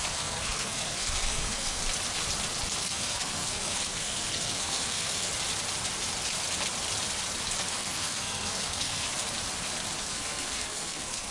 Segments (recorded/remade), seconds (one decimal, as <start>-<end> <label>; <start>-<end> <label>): 0.0-1.8 remade; 1.8-2.8 recorded; 2.8-5.3 remade; 5.3-7.7 recorded; 7.7-9.1 remade; 9.1-10.0 recorded; 10.0-11.3 remade